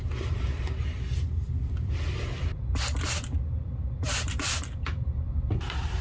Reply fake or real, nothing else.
real